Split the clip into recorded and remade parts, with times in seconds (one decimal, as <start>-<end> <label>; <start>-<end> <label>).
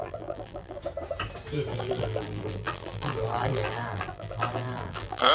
0.0-0.8 remade; 0.8-1.7 recorded; 1.7-5.3 remade